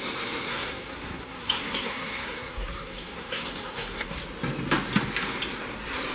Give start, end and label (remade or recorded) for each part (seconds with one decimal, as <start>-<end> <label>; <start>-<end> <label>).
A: 0.0-0.5 recorded; 0.5-4.2 remade; 4.2-6.1 recorded